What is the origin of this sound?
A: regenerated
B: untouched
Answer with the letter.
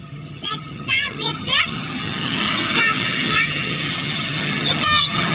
A